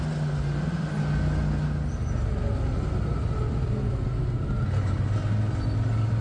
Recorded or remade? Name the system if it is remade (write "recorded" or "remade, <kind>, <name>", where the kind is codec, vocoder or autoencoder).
recorded